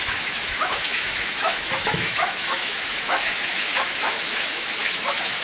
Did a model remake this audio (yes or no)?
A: yes